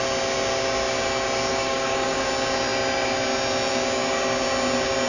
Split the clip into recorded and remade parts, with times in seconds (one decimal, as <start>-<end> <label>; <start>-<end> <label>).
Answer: 0.0-1.5 recorded; 1.5-2.3 remade; 2.3-5.1 recorded